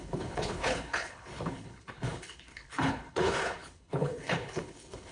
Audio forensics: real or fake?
fake